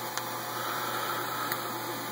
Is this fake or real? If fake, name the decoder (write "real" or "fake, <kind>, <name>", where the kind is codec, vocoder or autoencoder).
real